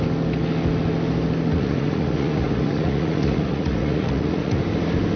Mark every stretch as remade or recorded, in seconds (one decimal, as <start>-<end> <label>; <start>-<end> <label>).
0.0-1.5 recorded; 1.5-4.6 remade; 4.6-5.2 recorded